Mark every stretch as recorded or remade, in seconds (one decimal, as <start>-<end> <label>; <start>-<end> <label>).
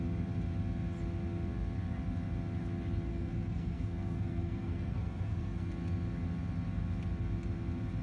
0.0-3.1 recorded; 3.1-5.7 remade; 5.7-8.0 recorded